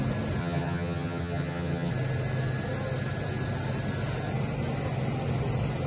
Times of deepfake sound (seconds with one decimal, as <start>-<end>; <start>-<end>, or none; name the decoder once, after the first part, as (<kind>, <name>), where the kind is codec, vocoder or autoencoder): 0.4-1.9 (vocoder, HiFi-GAN)